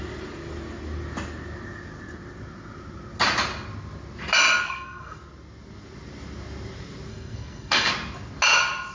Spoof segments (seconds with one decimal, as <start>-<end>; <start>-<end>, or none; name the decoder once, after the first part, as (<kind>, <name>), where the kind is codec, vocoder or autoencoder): 4.6-5.2 (codec, SNAC); 7.1-7.9